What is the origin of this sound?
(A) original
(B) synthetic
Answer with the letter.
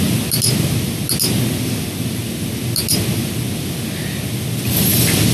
A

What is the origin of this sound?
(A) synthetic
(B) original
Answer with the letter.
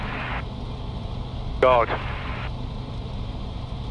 B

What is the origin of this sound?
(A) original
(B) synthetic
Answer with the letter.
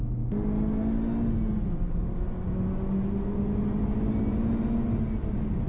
A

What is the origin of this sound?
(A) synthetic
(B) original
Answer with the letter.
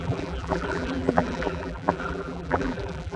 A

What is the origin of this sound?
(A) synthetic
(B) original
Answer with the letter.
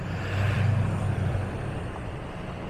A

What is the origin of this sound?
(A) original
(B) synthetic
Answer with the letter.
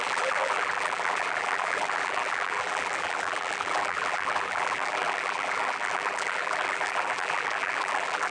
B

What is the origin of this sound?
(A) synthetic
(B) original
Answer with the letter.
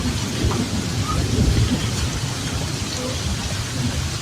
B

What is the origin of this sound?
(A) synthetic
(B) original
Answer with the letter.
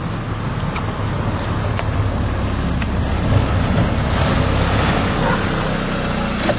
B